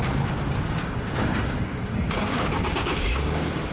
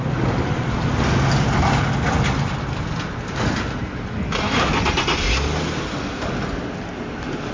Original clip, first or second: second